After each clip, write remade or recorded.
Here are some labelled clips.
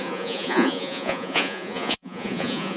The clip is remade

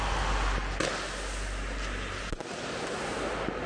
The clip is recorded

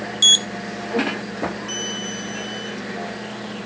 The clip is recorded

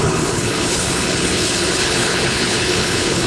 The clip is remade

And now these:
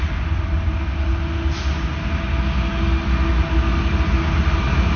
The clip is recorded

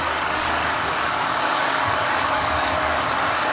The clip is remade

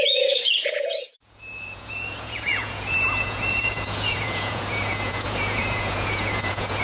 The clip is remade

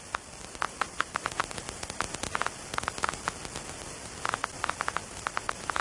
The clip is recorded